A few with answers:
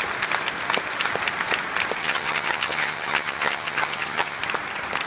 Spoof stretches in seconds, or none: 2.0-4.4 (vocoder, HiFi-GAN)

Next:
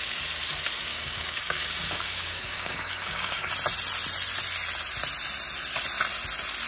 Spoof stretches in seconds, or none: 0.9-3.5 (codec, DAC)

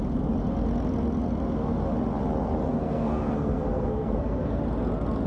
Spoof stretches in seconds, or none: 2.7-4.6 (codec, SNAC)

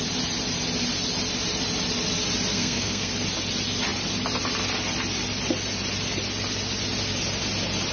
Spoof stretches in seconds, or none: 2.5-3.1 (codec, SNAC)

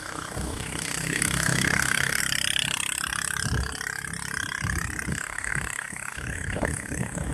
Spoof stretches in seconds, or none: 0.0-2.2 (codec, DAC); 5.1-7.3

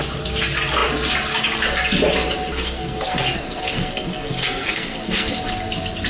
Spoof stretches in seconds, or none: 2.5-5.4 (codec, SNAC)

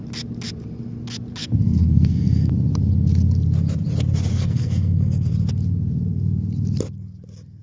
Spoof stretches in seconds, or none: 1.4-2.5 (codec, SNAC); 4.3-5.3

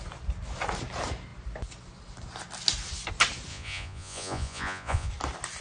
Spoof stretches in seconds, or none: 3.5-5.1 (vocoder, Vocos)